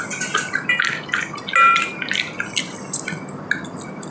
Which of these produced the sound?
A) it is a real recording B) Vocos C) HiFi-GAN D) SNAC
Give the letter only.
A